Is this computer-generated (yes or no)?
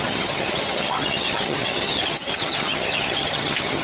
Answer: yes